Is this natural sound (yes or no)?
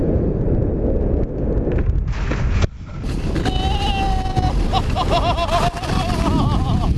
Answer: yes